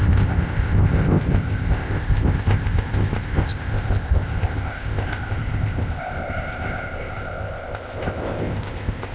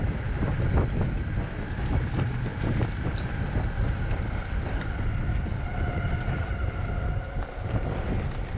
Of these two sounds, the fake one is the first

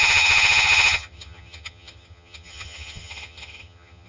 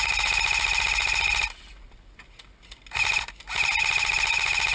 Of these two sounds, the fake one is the first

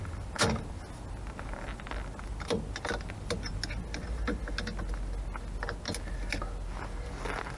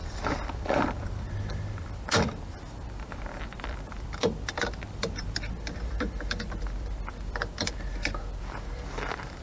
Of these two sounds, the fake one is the second